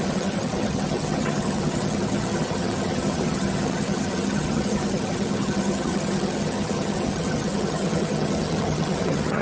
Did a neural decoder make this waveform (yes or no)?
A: yes